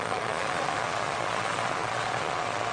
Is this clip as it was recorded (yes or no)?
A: no